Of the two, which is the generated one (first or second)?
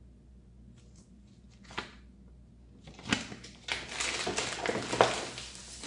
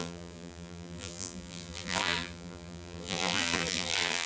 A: second